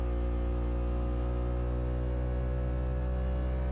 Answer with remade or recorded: recorded